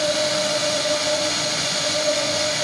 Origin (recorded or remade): remade